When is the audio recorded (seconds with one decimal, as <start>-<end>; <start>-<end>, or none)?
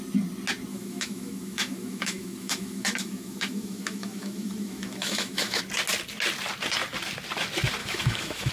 0.0-0.7; 5.6-7.8